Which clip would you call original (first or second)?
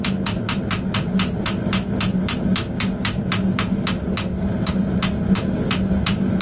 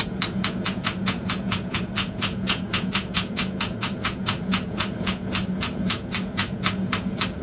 first